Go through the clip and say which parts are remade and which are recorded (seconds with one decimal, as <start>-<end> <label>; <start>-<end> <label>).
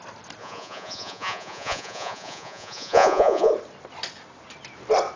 0.0-0.4 recorded; 0.4-3.5 remade; 3.5-5.2 recorded